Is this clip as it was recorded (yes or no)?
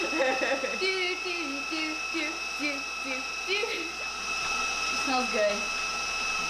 yes